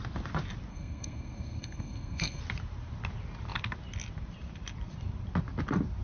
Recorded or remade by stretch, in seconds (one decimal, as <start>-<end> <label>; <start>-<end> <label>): 0.0-0.7 recorded; 0.7-2.4 remade; 2.4-6.0 recorded

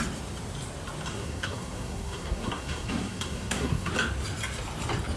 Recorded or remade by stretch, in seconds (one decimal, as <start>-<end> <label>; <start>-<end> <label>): 0.0-1.1 recorded; 1.1-3.9 remade; 3.9-5.2 recorded